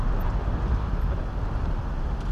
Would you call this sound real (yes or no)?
yes